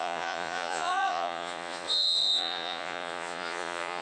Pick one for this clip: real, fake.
fake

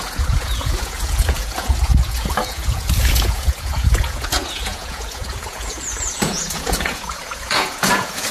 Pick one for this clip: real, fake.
fake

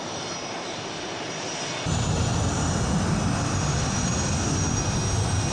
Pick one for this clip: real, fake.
real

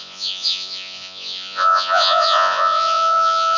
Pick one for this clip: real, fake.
fake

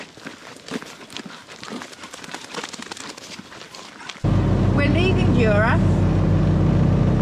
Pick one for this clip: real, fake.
real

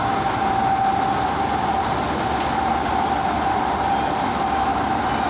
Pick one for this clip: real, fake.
real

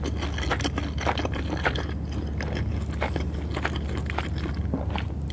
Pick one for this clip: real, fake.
real